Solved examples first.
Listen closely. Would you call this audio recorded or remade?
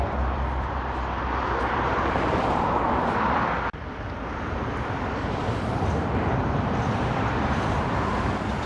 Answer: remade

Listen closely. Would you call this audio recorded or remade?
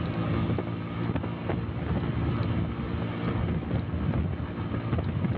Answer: recorded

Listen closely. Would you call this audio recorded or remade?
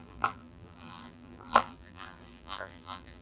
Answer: remade